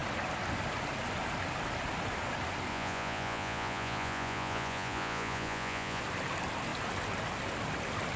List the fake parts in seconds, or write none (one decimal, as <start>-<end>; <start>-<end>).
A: 2.7-6.0